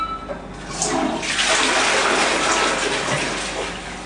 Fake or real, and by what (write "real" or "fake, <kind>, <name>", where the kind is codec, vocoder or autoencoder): real